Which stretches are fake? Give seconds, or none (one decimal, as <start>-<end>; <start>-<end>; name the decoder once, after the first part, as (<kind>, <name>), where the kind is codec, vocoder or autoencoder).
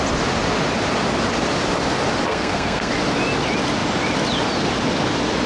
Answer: 2.3-2.9 (codec, SNAC)